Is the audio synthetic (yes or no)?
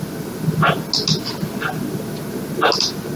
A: no